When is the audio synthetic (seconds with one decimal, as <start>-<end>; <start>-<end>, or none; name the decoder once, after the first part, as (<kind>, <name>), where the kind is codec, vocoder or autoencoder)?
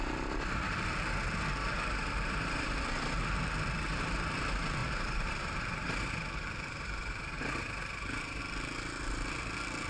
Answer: 1.6-2.8 (vocoder, BigVGAN v2); 4.8-8.4